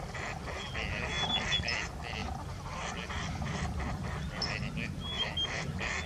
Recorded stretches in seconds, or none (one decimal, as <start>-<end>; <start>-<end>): 0.0-6.1